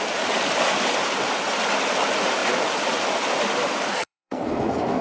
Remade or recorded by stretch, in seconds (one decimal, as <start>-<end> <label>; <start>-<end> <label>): 0.0-3.9 recorded; 3.9-5.0 remade